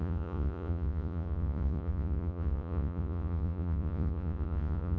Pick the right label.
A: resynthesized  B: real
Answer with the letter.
A